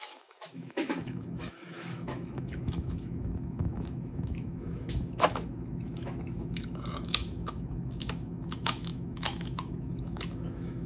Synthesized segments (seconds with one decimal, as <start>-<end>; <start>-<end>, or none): 0.0-10.9